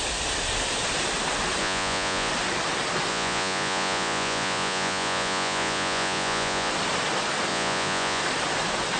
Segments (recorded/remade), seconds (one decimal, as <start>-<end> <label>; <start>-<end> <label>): 0.0-1.6 recorded; 1.6-2.3 remade; 2.3-3.1 recorded; 3.1-6.7 remade; 6.7-7.5 recorded; 7.5-8.2 remade; 8.2-9.0 recorded